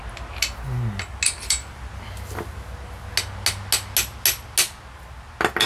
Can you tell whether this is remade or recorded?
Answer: recorded